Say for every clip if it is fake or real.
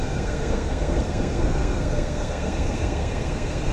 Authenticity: fake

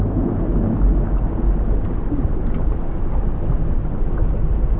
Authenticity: real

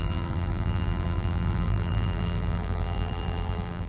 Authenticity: fake